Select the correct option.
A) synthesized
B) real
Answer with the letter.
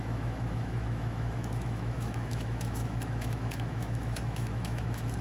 A